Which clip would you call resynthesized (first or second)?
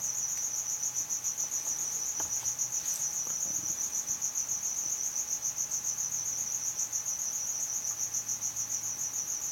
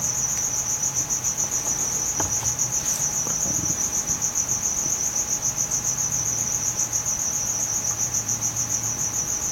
second